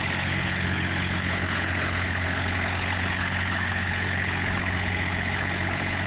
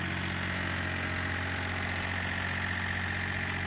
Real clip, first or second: second